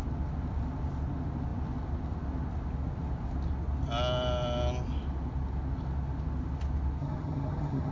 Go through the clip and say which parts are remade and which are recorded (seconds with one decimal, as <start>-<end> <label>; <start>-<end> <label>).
0.0-7.0 recorded; 7.0-7.9 remade